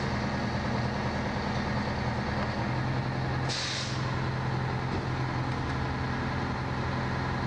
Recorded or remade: recorded